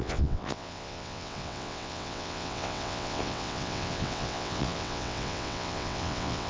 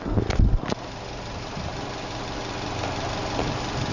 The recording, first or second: second